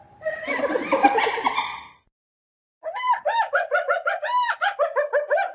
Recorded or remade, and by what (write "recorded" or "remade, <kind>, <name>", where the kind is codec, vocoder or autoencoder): recorded